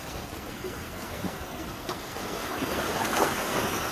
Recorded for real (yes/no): no